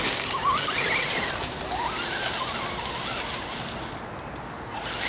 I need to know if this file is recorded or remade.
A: recorded